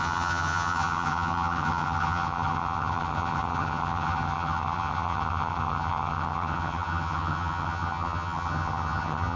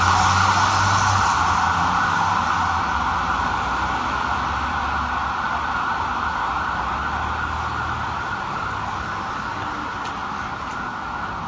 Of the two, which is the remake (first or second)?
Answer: first